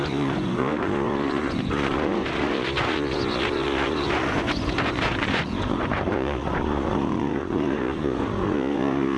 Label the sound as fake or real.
fake